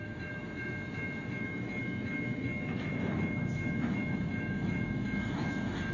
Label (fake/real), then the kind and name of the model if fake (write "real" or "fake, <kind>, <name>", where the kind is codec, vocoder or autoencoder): fake, autoencoder, DAC-VAE